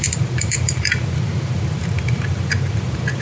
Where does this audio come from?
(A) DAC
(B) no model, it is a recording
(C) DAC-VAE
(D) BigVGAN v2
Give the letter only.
D